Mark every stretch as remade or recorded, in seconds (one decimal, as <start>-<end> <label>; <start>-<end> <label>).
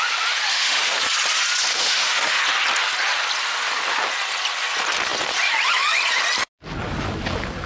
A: 0.0-0.5 recorded; 0.5-1.0 remade; 1.0-1.7 recorded; 1.7-2.4 remade; 2.4-7.7 recorded